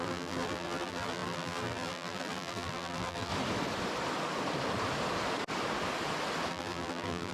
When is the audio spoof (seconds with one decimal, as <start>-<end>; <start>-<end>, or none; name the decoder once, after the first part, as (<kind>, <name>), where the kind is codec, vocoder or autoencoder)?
0.0-3.3 (vocoder, BigVGAN v2); 6.5-7.3